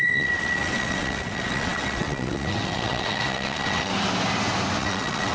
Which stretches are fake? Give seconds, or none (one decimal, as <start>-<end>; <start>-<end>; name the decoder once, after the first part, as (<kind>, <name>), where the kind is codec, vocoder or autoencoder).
0.0-3.9 (vocoder, WaveNeXt); 4.8-5.3

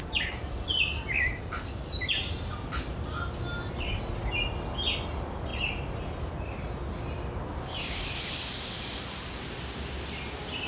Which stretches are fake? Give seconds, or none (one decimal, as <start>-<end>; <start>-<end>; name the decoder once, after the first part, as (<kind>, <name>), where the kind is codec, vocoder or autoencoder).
none

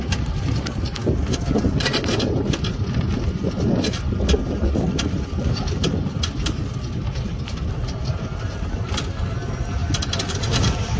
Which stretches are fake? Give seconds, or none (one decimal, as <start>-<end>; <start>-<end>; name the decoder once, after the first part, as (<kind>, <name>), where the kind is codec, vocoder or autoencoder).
none

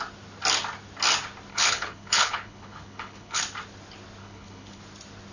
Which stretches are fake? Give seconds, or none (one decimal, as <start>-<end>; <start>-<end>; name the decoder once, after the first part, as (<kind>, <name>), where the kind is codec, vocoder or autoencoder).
1.5-3.4 (codec, HILCodec); 4.2-4.8